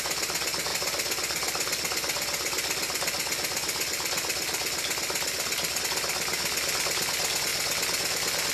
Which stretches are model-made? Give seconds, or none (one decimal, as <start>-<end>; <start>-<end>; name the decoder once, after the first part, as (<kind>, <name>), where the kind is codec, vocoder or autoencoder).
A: none